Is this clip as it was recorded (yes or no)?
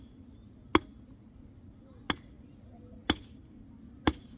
yes